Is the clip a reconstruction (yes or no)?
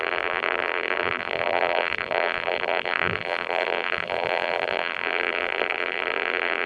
yes